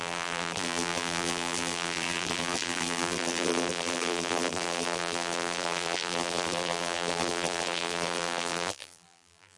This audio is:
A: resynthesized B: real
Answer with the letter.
A